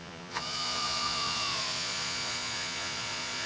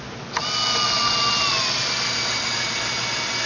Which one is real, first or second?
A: second